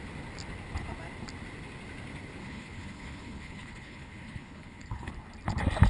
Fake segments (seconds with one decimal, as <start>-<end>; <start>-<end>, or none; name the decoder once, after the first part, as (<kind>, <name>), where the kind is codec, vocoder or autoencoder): 2.4-5.1 (codec, HILCodec)